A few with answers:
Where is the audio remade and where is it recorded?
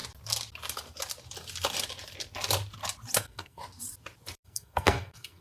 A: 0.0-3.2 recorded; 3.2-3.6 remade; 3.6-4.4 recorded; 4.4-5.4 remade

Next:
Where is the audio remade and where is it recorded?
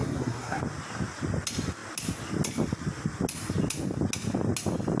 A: 0.0-0.6 remade; 0.6-5.0 recorded